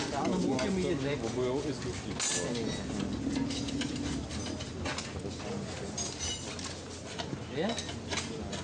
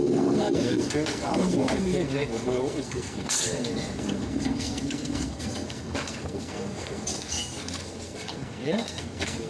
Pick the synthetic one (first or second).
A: second